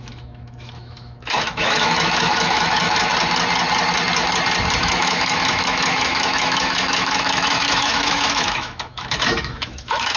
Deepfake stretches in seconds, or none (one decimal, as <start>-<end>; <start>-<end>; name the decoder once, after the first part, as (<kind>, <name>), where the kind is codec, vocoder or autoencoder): 0.0-3.1 (autoencoder, DAC-VAE); 4.8-10.2